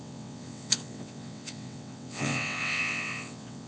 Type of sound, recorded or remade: remade